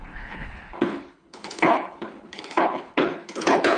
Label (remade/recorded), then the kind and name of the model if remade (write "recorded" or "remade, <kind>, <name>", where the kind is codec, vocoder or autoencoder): remade, codec, HILCodec